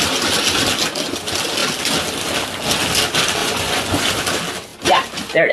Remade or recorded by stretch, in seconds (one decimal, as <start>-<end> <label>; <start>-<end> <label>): 0.0-3.4 recorded; 3.4-4.1 remade; 4.1-5.5 recorded